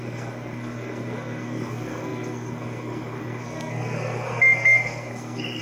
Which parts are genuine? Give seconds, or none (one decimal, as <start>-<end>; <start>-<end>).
none